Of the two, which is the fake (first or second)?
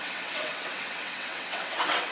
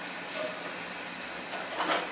first